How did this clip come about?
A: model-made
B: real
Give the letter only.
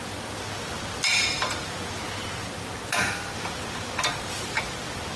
B